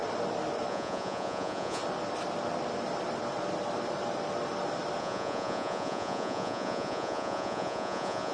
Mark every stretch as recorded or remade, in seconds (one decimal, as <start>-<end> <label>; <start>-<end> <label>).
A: 0.0-0.7 recorded; 0.7-1.8 remade; 1.8-5.0 recorded; 5.0-8.3 remade